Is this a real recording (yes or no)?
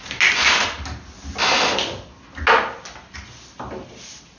yes